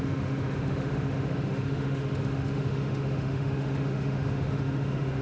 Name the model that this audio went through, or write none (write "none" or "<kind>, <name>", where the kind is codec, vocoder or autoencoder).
autoencoder, DAC-VAE